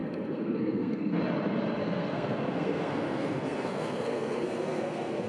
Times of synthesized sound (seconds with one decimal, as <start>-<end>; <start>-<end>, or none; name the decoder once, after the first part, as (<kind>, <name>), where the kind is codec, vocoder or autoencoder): 0.0-1.2 (codec, SNAC); 1.8-5.3